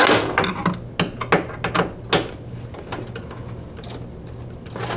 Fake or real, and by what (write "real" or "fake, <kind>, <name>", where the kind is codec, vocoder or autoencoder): real